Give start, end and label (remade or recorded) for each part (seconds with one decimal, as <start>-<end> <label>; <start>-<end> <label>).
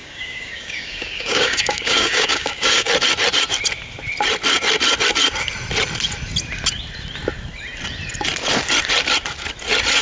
0.0-2.9 remade; 2.9-10.0 recorded